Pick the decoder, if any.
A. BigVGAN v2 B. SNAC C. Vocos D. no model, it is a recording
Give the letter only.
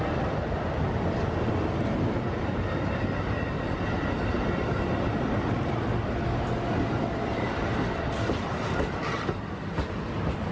D